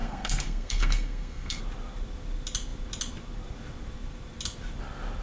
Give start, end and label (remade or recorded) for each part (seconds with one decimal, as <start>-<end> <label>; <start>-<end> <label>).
0.0-1.6 remade; 1.6-5.2 recorded